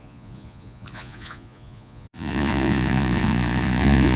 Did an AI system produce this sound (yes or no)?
yes